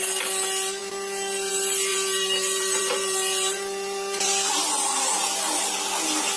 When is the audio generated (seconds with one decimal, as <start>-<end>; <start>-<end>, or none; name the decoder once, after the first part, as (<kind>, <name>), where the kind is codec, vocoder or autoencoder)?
1.9-5.7 (vocoder, BigVGAN v2)